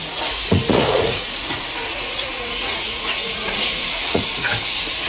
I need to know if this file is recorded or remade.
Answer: remade